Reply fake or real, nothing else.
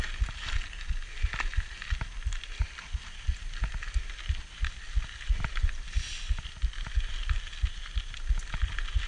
real